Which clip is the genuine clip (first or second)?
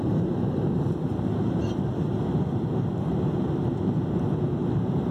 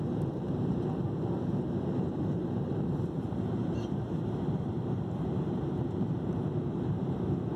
first